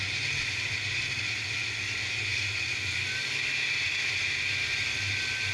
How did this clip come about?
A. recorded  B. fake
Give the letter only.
A